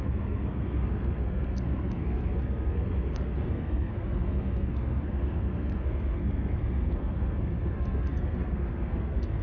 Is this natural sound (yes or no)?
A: no